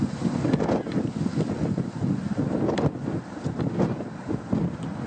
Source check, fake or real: real